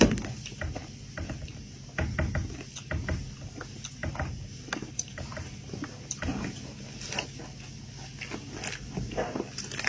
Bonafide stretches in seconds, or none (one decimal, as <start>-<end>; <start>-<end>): 0.0-4.0; 6.2-9.9